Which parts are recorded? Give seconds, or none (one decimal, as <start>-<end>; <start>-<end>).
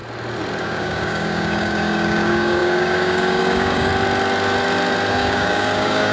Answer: 0.0-0.6; 3.9-5.1